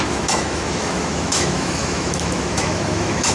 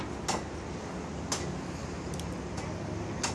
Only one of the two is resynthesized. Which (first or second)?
first